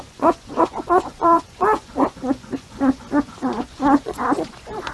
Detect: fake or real fake